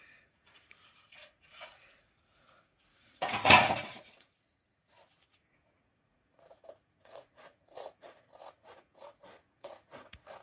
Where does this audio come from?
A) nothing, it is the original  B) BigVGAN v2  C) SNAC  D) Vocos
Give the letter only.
D